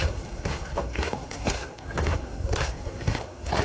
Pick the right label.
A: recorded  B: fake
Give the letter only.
B